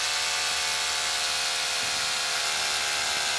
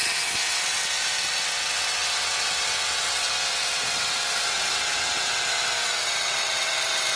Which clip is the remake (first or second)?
second